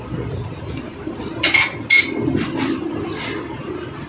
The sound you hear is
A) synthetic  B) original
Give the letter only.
B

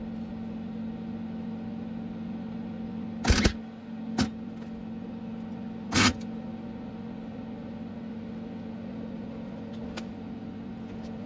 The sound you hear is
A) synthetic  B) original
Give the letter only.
B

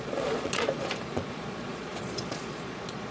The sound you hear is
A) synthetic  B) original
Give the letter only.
A